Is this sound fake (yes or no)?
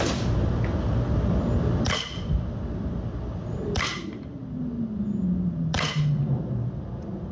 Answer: no